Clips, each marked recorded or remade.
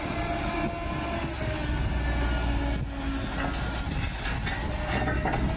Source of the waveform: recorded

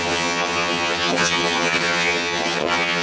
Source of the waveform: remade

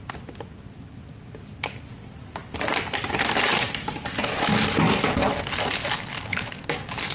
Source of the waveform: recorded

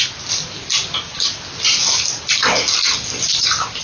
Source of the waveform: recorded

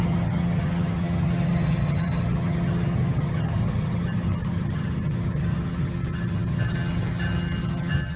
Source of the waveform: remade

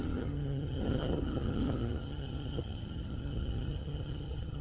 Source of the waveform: remade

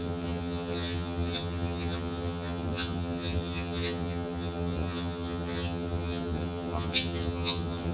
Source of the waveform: remade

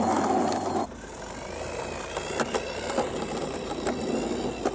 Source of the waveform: recorded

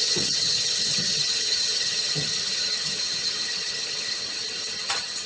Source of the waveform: remade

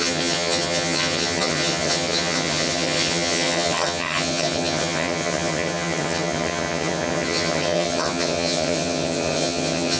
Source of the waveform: remade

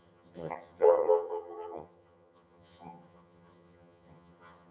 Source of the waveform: remade